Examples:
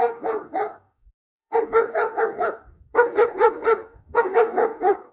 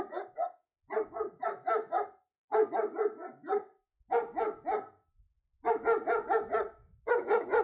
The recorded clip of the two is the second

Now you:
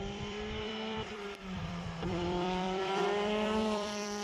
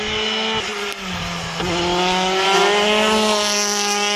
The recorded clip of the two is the second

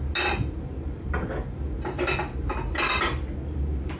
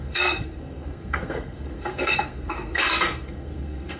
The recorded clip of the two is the first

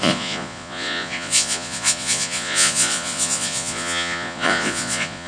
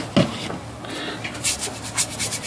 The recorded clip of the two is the second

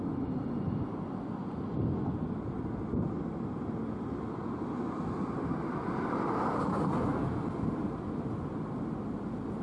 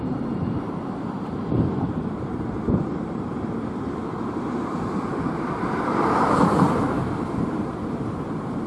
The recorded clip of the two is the first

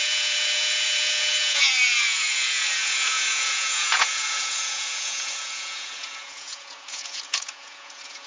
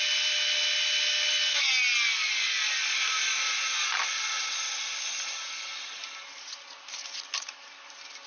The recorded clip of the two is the second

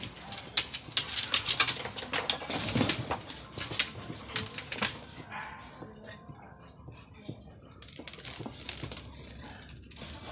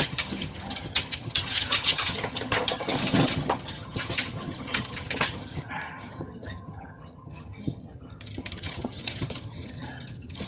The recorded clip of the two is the first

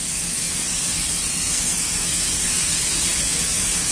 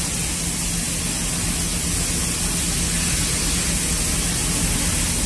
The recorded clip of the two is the second